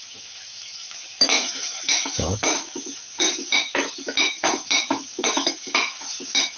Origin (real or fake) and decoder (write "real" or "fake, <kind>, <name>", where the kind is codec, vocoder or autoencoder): fake, autoencoder, DAC-VAE